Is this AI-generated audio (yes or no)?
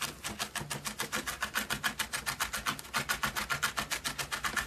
no